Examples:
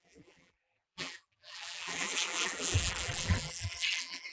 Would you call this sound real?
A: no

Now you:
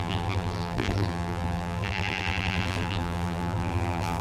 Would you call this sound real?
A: no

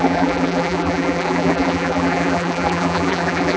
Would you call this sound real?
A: no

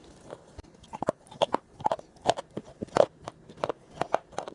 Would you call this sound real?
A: no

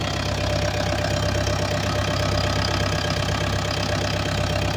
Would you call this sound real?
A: yes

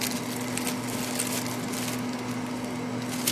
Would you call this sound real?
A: yes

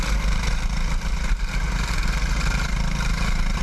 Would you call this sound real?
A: no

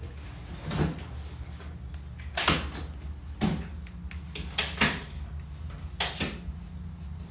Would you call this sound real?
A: yes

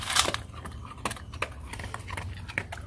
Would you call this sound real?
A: yes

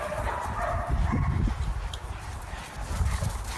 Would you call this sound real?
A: yes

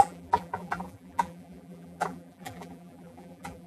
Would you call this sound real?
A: no